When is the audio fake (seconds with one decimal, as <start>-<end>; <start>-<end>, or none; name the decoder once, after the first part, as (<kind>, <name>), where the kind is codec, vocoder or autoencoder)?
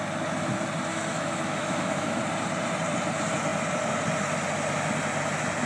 0.9-2.2 (autoencoder, DAC-VAE)